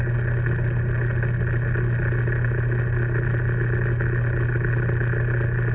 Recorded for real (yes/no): yes